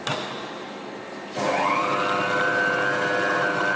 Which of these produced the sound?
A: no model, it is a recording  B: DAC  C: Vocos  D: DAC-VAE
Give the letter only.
A